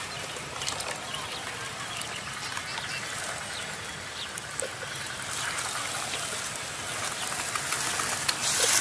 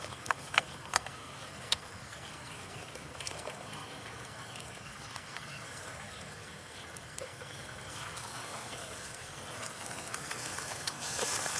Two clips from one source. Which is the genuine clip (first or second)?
first